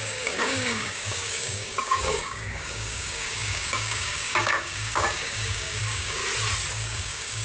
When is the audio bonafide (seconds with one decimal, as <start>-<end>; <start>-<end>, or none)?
6.2-6.7